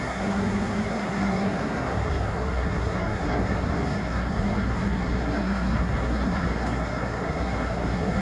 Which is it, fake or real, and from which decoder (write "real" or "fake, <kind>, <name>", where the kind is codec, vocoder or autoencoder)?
fake, codec, SNAC